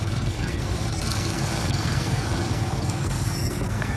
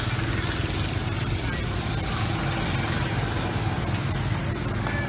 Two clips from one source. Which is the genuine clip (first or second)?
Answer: second